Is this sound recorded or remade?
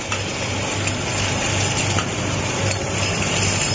recorded